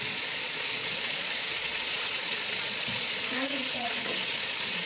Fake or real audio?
fake